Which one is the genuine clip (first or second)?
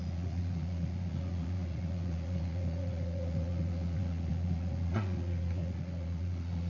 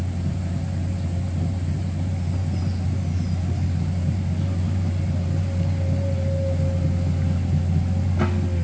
second